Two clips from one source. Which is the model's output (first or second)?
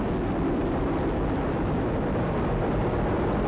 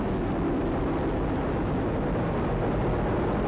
first